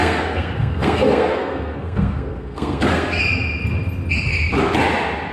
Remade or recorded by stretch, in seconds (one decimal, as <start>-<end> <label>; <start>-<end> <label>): 0.0-3.2 remade; 3.2-5.3 recorded